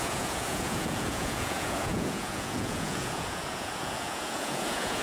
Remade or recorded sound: remade